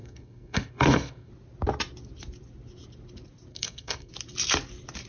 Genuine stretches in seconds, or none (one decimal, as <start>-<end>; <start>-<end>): 1.3-3.5; 4.1-5.1

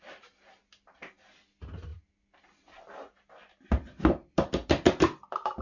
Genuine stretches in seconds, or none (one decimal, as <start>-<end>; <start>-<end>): 0.0-5.6

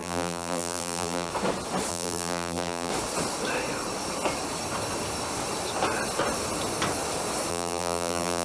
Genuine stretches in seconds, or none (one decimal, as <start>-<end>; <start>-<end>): 1.3-1.9; 2.9-7.5

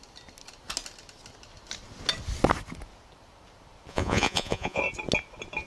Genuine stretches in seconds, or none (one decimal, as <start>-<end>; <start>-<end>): 0.0-3.9; 4.8-5.7

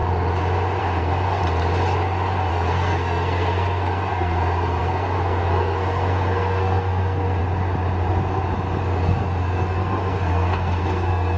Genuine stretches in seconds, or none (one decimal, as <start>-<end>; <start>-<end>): 0.0-0.8; 1.4-2.5; 7.4-8.8

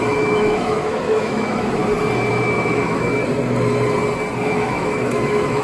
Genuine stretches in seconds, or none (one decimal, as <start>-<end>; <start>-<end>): 1.8-2.3; 3.2-4.4

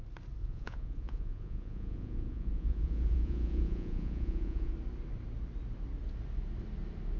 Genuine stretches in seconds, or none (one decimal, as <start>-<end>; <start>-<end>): 0.0-0.4; 4.7-7.2